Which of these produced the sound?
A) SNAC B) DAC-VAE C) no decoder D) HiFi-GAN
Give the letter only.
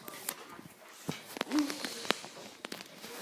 C